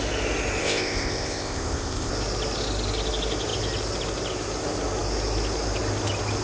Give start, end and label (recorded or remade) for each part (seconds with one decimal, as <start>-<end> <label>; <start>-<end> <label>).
0.0-0.6 recorded; 0.6-2.1 remade; 2.1-6.4 recorded